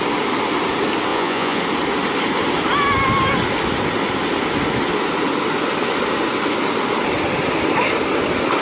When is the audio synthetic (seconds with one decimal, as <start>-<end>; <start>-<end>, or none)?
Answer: 1.1-1.6